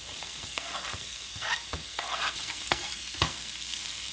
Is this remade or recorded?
remade